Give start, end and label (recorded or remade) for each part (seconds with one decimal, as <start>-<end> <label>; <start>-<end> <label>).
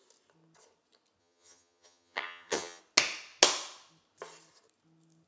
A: 0.0-1.2 recorded; 1.2-2.8 remade; 2.8-5.3 recorded